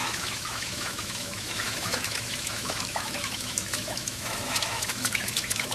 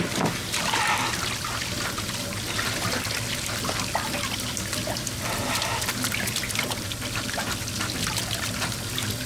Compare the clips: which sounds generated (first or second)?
first